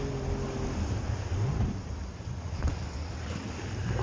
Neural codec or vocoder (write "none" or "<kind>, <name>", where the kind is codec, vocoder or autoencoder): none